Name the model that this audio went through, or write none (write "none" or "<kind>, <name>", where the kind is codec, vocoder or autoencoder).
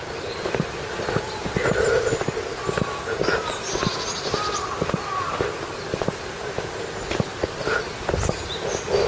none